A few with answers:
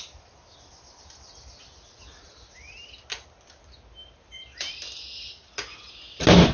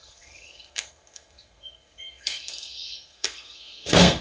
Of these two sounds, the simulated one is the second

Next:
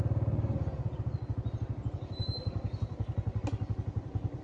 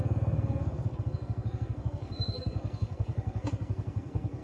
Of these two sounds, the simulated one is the second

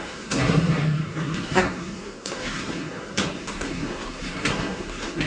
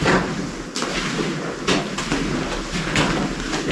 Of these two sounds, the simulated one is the first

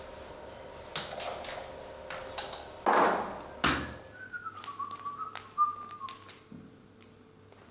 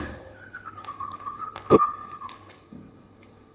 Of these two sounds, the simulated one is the second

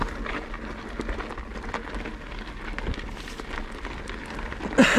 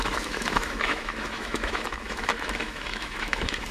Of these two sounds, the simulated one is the second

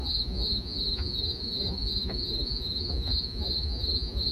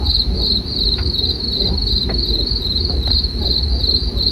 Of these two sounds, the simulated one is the first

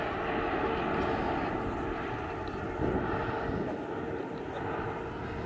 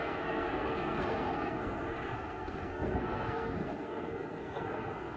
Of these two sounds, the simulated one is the second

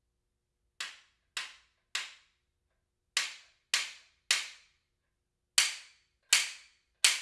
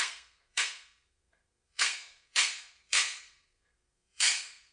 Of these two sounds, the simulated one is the second